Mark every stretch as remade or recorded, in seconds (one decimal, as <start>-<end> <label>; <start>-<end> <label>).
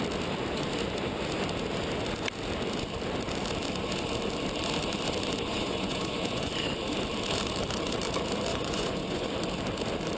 0.0-5.5 recorded; 5.5-6.5 remade; 6.5-8.5 recorded; 8.5-9.3 remade; 9.3-10.2 recorded